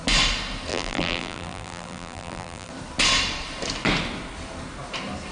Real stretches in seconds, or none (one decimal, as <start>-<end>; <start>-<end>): 0.0-0.7; 2.7-5.3